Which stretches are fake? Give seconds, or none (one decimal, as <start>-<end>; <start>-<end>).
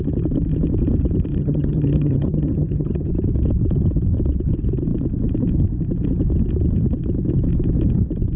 1.3-3.1